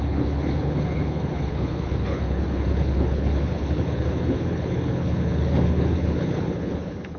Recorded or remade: remade